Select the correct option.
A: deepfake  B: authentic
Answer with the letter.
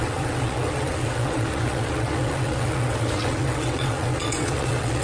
A